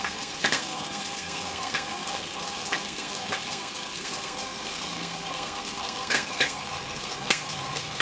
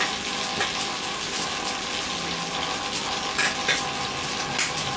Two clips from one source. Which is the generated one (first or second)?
first